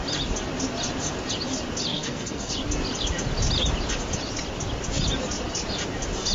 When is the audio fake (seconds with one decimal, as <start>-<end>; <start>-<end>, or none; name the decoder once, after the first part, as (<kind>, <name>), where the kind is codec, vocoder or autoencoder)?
1.9-2.5 (codec, SNAC)